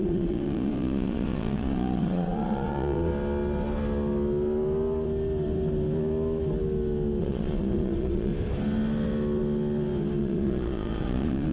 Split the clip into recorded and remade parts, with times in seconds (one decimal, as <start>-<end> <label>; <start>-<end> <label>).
0.0-3.1 remade; 3.1-7.2 recorded; 7.2-8.3 remade; 8.3-10.2 recorded; 10.2-11.5 remade